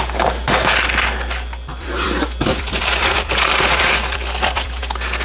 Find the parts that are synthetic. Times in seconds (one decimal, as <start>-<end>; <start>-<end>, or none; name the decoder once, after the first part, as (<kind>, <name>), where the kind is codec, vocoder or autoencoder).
1.7-4.8 (vocoder, BigVGAN v2)